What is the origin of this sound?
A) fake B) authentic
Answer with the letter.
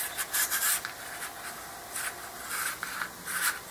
A